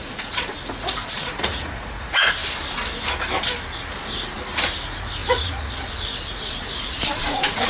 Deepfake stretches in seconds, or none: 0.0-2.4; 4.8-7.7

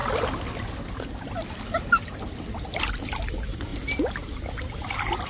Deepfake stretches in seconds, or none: none

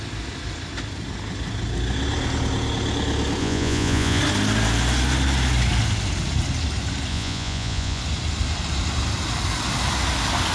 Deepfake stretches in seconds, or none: 3.4-4.2; 7.1-8.0

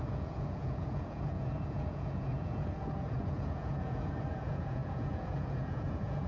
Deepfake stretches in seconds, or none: 0.0-6.3

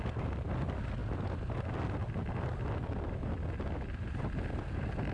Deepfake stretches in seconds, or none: none

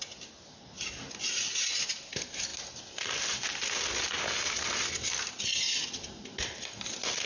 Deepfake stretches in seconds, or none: none

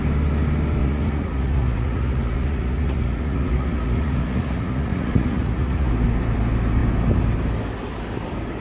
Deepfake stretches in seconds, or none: 0.8-5.9